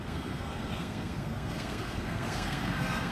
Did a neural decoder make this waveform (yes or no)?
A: yes